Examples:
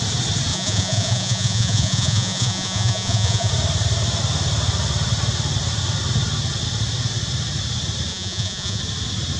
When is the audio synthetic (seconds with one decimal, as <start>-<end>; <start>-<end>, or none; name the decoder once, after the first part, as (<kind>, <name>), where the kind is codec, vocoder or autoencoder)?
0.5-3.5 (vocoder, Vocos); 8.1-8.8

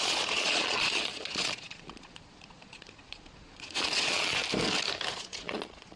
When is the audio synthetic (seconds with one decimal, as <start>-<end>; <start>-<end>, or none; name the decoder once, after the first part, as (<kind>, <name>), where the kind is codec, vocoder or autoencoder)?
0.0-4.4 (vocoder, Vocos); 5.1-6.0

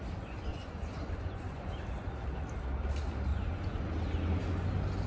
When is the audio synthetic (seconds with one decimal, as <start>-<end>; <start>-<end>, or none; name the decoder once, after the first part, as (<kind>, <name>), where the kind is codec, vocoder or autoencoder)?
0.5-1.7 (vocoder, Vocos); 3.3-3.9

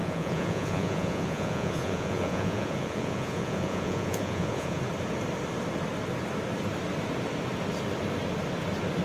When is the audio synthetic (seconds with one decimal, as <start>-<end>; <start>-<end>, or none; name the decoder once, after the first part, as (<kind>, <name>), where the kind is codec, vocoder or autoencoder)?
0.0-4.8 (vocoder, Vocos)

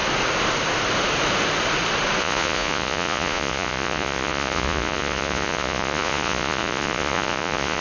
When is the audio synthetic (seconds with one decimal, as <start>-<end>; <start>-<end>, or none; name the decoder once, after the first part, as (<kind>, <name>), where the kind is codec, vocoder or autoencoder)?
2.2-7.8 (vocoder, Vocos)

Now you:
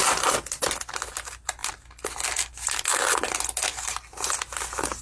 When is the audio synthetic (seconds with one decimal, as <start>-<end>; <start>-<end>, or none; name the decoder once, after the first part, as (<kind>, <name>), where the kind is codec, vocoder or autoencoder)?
none

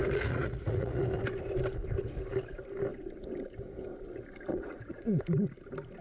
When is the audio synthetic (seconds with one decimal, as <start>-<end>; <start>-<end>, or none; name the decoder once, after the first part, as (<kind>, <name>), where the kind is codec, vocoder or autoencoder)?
0.0-1.0 (vocoder, Vocos); 4.5-5.2

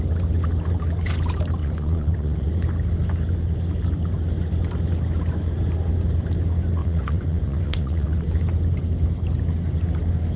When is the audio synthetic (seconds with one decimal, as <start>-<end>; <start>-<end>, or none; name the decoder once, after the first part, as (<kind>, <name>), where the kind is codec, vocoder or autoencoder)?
1.6-2.5 (vocoder, Vocos); 6.8-8.3